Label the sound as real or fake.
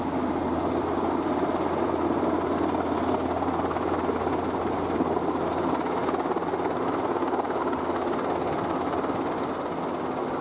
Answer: real